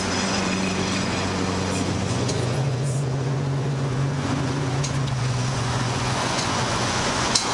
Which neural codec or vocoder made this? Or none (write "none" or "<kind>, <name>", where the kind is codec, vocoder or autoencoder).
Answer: vocoder, Vocos